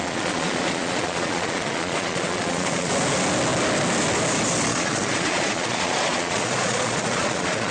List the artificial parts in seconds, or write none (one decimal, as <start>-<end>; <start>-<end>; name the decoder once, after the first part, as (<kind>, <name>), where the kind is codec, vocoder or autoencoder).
0.0-2.9 (vocoder, Vocos); 4.7-7.7